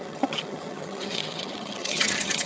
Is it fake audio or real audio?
fake